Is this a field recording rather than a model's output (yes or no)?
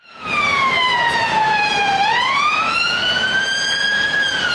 no